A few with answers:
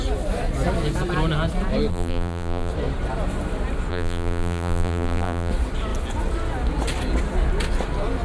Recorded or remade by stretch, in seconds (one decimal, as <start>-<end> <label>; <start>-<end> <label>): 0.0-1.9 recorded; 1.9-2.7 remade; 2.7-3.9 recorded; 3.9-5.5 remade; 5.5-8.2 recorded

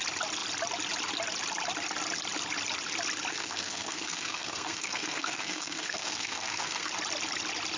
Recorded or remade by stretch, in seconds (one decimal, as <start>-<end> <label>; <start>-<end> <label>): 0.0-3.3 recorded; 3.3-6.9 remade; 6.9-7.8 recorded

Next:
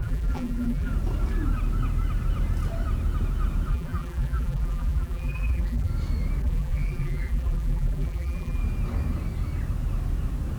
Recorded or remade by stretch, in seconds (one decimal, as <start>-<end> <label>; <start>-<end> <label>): 0.0-0.9 remade; 0.9-3.7 recorded; 3.7-5.9 remade; 5.9-6.4 recorded; 6.4-8.6 remade; 8.6-10.6 recorded

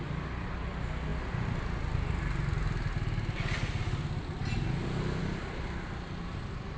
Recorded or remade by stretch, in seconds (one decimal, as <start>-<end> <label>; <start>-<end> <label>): 0.0-6.8 recorded

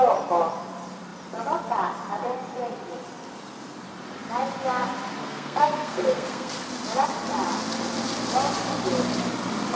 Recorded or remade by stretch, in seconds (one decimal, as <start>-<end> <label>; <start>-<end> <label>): 0.0-5.2 recorded; 5.2-6.5 remade; 6.5-9.8 recorded